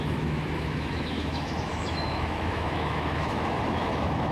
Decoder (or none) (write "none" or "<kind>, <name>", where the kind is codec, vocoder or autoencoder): autoencoder, DAC-VAE